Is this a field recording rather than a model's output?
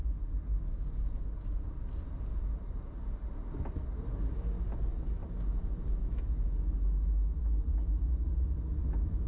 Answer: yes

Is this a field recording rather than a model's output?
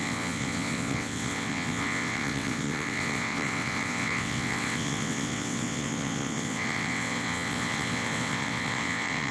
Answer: no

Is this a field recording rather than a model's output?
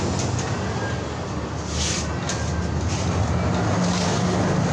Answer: yes